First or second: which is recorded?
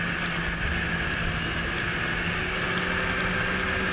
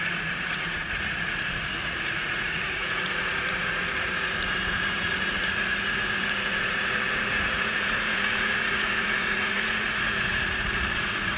first